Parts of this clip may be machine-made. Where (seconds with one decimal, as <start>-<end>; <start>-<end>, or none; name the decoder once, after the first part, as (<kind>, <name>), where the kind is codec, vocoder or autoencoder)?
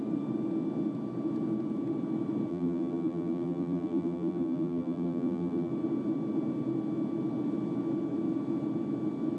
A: 2.5-5.7 (vocoder, BigVGAN v2)